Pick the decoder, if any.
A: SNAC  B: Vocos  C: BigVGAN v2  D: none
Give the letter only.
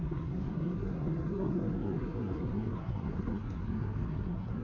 A